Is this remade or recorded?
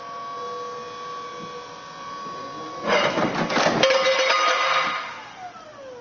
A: recorded